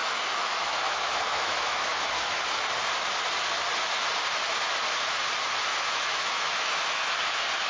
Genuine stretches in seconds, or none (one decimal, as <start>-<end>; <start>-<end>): 2.4-5.7; 7.1-7.7